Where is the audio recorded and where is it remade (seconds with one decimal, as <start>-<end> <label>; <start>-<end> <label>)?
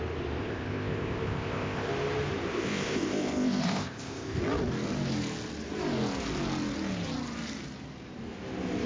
0.0-0.4 recorded; 0.4-1.9 remade; 1.9-2.5 recorded; 2.5-4.4 remade; 4.4-8.9 recorded